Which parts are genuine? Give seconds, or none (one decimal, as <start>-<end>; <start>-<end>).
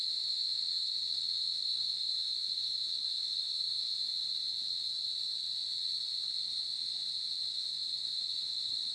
4.1-7.5